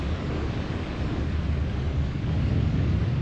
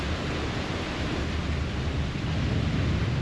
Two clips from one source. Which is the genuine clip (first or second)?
second